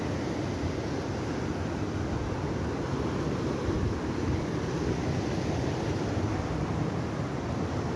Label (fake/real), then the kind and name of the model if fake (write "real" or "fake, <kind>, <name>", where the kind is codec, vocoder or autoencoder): real